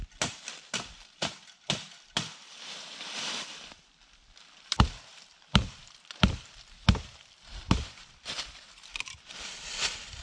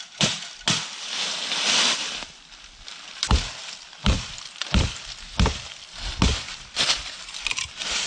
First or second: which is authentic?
second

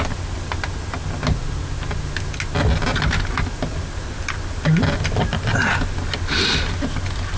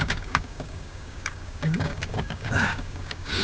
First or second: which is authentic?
first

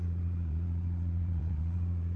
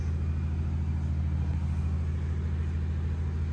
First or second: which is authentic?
second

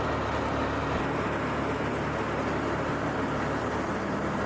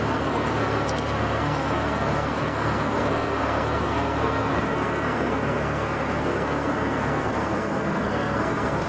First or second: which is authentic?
first